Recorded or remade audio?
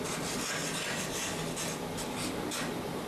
recorded